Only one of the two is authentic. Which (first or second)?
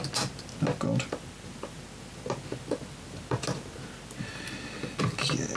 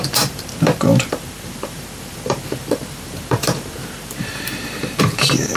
first